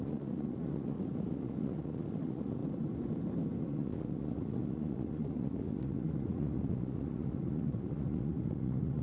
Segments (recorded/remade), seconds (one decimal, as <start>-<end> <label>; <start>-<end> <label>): 0.0-2.6 remade; 2.6-3.6 recorded; 3.6-9.0 remade